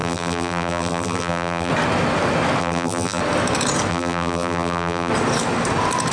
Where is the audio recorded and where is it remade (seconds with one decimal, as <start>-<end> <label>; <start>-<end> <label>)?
0.0-1.7 remade; 1.7-2.6 recorded; 2.6-3.2 remade; 3.2-3.9 recorded; 3.9-5.1 remade; 5.1-6.1 recorded